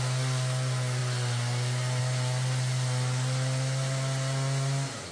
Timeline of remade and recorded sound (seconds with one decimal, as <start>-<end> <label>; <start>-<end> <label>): 0.0-5.1 recorded